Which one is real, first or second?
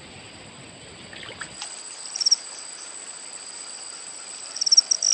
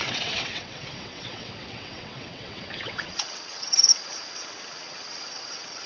first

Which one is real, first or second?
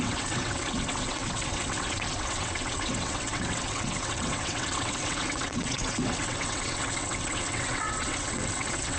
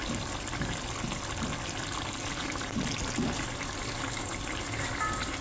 second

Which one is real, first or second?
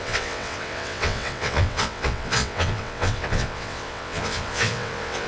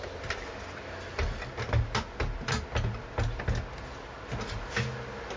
second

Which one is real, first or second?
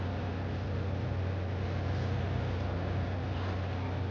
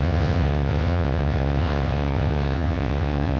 first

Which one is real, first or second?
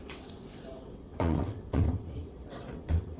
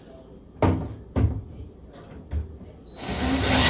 second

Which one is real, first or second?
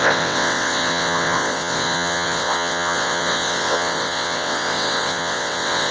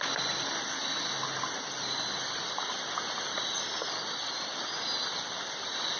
second